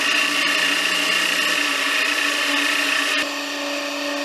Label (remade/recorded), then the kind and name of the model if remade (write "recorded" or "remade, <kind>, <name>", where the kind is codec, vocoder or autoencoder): recorded